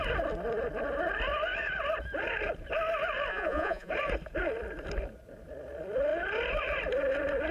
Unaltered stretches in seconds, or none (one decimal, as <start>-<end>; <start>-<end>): 0.0-3.3; 3.9-7.5